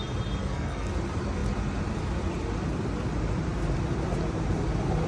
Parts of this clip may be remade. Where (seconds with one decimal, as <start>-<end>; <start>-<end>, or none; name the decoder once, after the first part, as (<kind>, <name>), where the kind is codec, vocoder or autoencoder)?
0.4-0.9 (codec, SNAC)